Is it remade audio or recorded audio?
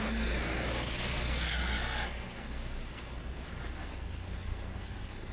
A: remade